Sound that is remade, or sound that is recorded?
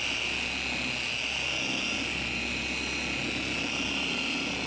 recorded